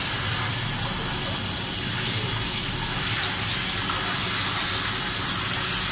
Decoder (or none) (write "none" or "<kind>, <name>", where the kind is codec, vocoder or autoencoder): none